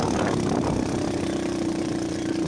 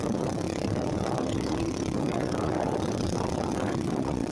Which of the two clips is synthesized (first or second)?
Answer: second